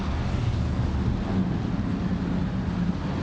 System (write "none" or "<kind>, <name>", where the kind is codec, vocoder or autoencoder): none